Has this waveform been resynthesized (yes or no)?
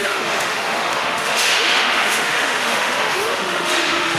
yes